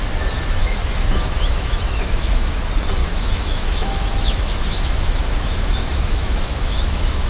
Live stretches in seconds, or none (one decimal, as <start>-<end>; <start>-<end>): 0.0-0.6; 2.6-3.0